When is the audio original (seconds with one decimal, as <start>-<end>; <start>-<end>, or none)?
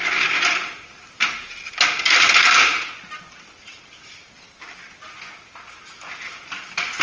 0.0-7.0